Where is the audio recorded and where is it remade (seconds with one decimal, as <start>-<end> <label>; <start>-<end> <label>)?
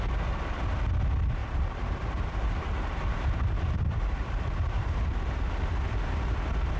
0.0-1.4 recorded; 1.4-5.4 remade; 5.4-6.8 recorded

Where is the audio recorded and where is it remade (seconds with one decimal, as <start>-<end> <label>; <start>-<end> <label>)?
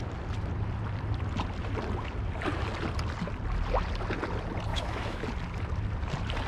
0.0-4.7 recorded; 4.7-5.2 remade; 5.2-6.5 recorded